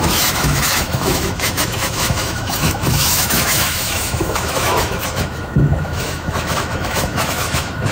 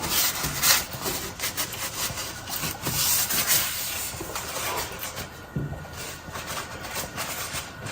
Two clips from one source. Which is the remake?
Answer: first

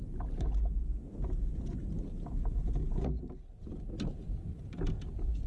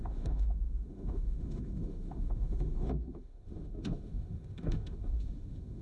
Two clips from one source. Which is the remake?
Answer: second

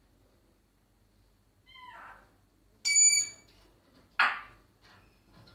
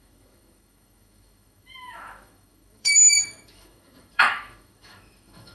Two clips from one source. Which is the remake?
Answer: second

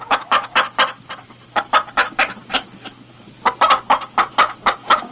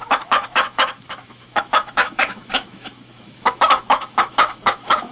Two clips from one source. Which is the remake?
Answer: second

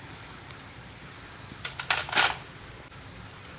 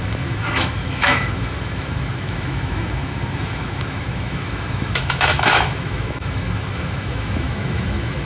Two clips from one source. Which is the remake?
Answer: second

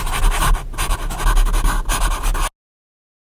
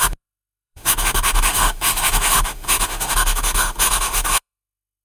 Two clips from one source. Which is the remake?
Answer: second